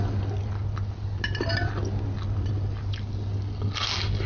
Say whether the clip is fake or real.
real